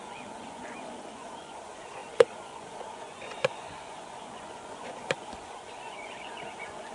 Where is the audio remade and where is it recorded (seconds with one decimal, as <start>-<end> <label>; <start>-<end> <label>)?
0.0-6.9 remade